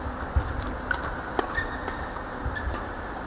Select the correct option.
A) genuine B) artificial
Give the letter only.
A